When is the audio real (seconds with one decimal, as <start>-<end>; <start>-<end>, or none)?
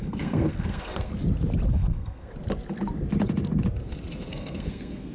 1.1-1.7; 2.3-4.3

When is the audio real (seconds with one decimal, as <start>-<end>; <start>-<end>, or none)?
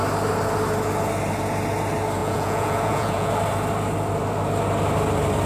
0.0-2.2; 3.3-5.5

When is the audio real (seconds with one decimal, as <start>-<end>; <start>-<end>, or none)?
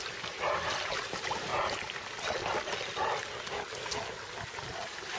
1.5-4.4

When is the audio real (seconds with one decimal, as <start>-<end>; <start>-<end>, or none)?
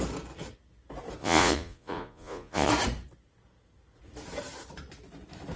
0.0-1.2; 2.7-5.6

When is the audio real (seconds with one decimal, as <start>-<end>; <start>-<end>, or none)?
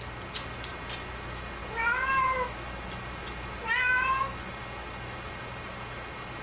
0.0-6.4